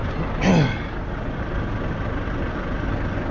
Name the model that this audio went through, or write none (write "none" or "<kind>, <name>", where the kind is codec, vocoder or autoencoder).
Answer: none